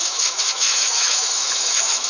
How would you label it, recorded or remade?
remade